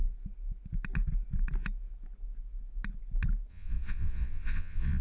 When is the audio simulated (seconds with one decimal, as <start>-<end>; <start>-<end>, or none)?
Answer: 3.5-5.0